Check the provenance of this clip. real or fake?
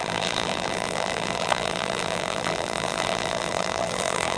fake